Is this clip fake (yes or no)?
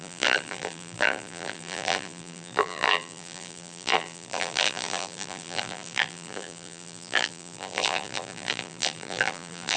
yes